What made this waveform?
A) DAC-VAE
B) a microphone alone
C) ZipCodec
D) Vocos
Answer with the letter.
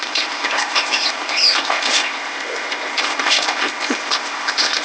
C